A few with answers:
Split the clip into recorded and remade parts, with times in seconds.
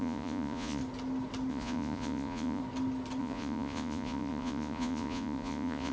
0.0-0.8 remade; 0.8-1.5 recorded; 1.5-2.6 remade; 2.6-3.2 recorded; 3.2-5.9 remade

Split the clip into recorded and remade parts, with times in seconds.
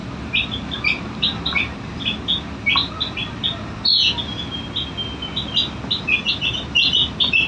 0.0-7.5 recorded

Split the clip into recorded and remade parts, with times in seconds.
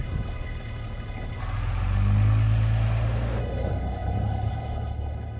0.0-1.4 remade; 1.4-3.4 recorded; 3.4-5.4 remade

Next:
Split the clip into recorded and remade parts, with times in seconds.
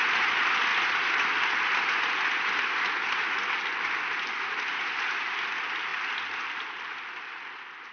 0.0-7.9 recorded